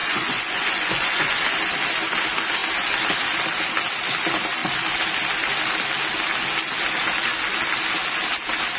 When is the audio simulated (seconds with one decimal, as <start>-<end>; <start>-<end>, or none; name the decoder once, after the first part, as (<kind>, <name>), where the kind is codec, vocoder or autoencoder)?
0.0-1.4 (vocoder, Vocos)